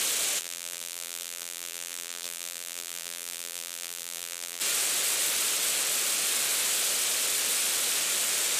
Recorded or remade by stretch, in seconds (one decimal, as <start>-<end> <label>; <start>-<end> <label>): 0.0-0.4 recorded; 0.4-4.6 remade; 4.6-8.6 recorded